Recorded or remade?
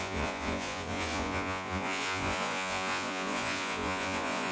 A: remade